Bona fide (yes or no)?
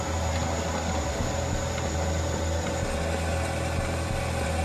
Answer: yes